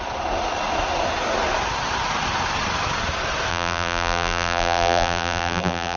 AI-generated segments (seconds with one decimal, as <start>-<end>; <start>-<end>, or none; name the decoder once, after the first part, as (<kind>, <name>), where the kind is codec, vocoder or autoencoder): 3.5-6.0 (vocoder, BigVGAN v2)